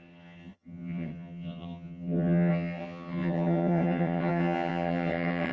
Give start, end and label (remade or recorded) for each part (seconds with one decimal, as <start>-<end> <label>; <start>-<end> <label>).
0.0-5.5 remade